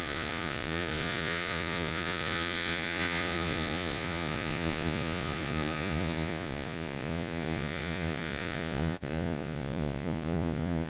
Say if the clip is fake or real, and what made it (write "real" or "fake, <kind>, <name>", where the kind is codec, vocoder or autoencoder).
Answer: fake, vocoder, Vocos